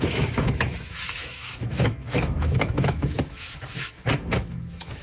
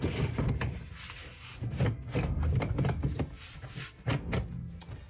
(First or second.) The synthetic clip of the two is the first